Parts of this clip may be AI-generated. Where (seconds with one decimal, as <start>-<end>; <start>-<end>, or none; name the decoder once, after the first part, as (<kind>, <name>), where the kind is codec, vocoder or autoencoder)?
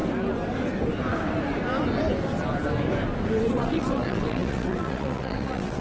3.5-5.8 (vocoder, WaveNeXt)